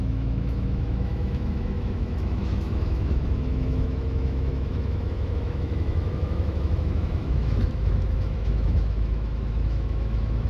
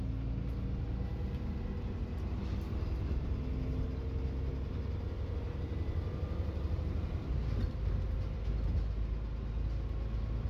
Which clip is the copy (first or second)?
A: first